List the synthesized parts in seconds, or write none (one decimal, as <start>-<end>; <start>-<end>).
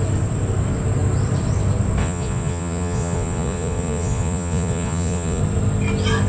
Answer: 2.0-5.4